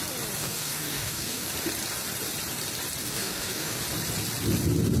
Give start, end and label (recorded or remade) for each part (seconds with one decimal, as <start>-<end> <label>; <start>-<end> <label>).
0.0-0.4 recorded; 0.4-1.5 remade; 1.5-3.0 recorded; 3.0-3.8 remade; 3.8-5.0 recorded